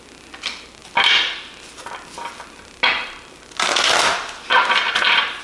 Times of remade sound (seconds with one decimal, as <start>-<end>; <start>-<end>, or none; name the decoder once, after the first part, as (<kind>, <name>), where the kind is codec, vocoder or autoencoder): none